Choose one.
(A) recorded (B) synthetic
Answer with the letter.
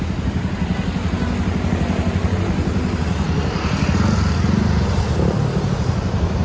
A